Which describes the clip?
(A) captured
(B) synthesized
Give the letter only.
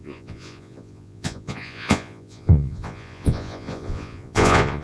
B